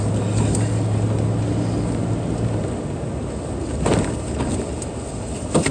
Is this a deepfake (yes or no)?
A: no